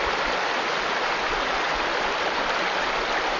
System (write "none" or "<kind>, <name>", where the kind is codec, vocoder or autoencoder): none